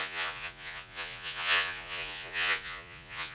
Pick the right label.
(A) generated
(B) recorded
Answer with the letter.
A